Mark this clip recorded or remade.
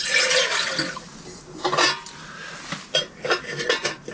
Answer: recorded